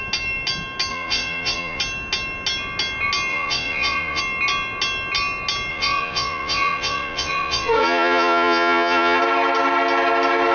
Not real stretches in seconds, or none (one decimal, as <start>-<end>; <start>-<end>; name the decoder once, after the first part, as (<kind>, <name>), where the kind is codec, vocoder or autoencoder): 0.9-1.8 (vocoder, Vocos); 3.3-4.2; 5.7-9.2